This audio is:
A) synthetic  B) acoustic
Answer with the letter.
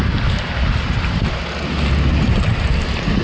B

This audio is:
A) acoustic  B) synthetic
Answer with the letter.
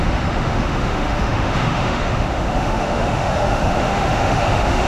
B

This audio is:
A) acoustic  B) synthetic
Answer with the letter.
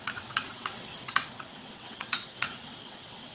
B